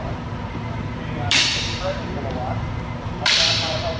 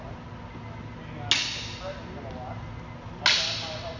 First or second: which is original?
second